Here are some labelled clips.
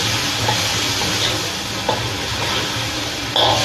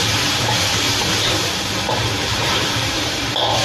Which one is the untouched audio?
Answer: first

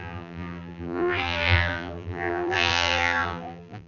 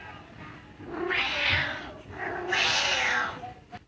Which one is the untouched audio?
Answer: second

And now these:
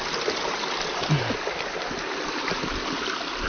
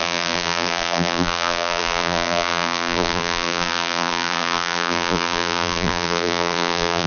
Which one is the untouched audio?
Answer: first